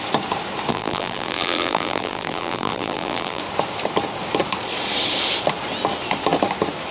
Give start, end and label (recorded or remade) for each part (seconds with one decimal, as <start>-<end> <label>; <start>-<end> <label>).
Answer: 0.0-0.7 recorded; 0.7-3.4 remade; 3.4-6.9 recorded